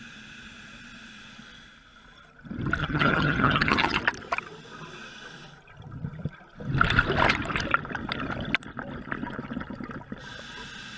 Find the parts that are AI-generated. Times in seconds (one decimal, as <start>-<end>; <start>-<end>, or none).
2.8-4.0